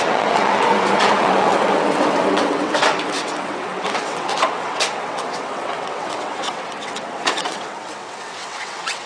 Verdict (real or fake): fake